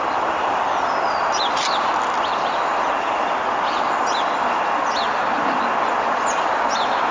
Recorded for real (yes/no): yes